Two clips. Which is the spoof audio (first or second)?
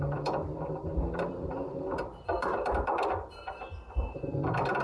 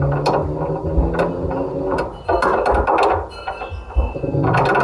first